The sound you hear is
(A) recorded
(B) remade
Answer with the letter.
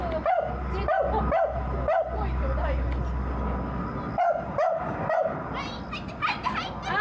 A